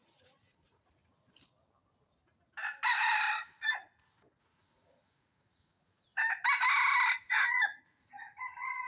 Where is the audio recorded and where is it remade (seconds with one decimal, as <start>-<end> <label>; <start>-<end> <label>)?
0.0-1.0 remade; 1.0-4.4 recorded; 4.4-6.1 remade; 6.1-7.3 recorded; 7.3-8.9 remade